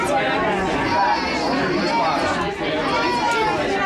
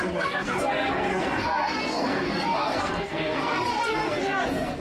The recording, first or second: first